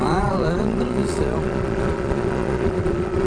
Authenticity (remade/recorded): remade